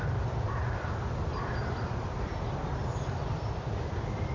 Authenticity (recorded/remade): recorded